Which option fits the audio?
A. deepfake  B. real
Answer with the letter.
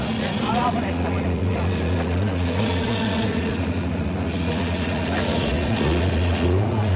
A